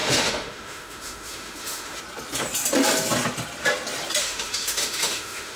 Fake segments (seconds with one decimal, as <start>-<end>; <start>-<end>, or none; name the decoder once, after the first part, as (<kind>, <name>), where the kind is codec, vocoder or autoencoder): 0.0-2.0 (autoencoder, DAC-VAE); 4.2-5.6